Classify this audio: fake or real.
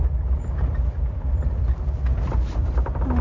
real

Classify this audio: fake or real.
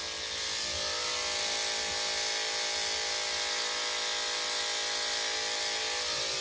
real